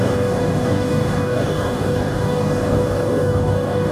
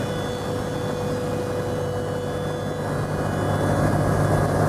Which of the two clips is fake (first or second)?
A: first